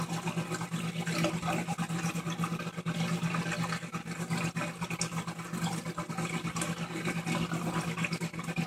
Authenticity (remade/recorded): recorded